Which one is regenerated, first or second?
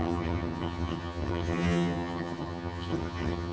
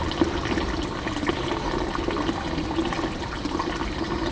first